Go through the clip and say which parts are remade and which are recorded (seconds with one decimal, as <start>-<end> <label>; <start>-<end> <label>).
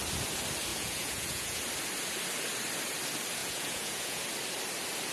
0.0-0.7 recorded; 0.7-1.6 remade; 1.6-3.4 recorded; 3.4-4.2 remade; 4.2-5.1 recorded